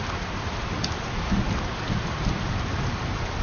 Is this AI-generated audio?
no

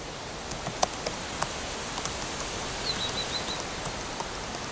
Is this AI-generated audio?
no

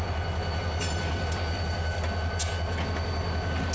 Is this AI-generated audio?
no